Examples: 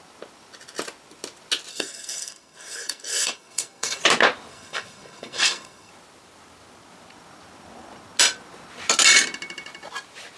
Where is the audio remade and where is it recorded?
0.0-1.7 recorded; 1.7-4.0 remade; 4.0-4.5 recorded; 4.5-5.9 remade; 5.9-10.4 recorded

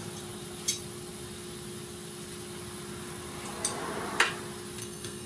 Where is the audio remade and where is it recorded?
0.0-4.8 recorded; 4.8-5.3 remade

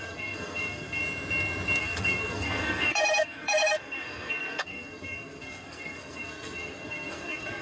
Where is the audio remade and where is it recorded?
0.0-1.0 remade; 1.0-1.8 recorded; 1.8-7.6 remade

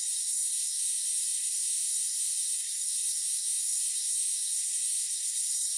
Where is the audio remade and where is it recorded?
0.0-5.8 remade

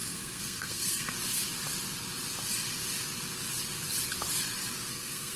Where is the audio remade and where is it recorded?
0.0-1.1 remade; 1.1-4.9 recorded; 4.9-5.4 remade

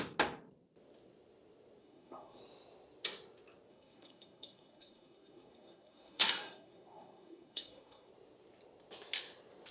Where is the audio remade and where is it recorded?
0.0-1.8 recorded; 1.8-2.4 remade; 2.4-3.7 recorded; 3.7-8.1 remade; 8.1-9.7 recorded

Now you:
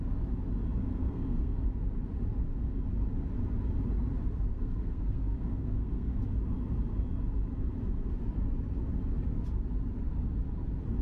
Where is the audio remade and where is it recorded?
0.0-0.8 recorded; 0.8-1.7 remade; 1.7-4.5 recorded; 4.5-6.2 remade; 6.2-11.0 recorded

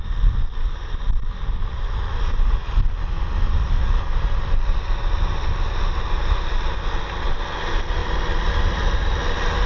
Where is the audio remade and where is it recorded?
0.0-9.7 recorded